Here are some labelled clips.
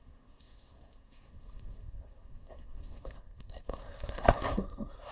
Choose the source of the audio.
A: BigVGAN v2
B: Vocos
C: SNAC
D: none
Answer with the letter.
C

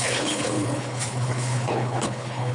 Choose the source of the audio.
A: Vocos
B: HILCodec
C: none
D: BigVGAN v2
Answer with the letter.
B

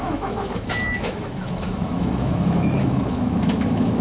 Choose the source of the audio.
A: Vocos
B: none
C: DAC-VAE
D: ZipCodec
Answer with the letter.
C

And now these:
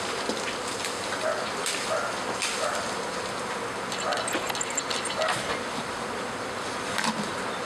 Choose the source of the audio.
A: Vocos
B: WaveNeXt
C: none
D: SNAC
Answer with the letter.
C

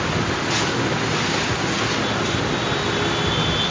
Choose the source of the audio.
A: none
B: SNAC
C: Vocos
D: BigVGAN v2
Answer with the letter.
A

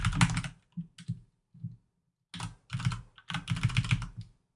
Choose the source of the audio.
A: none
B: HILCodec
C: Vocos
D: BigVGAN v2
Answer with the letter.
A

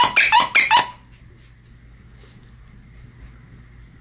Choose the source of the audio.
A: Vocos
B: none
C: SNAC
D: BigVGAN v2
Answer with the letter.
B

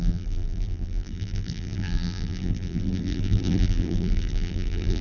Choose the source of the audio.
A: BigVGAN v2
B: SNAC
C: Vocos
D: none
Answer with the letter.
A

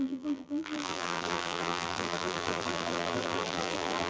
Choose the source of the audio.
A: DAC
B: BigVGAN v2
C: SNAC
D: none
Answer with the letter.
B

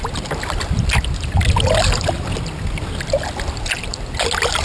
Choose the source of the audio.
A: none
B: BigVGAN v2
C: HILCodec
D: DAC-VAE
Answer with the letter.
A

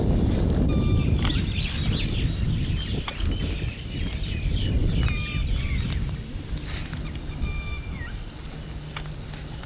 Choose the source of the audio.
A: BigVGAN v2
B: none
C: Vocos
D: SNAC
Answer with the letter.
B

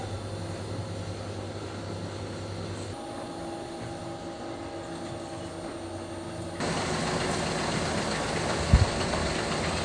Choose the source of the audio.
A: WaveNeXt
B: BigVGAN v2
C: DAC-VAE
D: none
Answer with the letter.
D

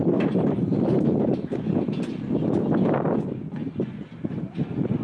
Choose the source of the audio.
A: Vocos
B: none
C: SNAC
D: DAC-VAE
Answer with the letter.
B